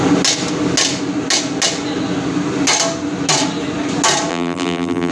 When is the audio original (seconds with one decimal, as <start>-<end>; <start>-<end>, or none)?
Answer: 0.0-4.3